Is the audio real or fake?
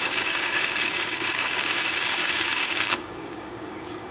fake